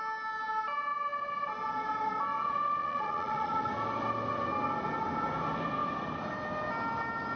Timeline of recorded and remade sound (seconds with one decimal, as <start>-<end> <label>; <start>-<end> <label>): 0.0-2.8 recorded; 2.8-3.7 remade; 3.7-7.4 recorded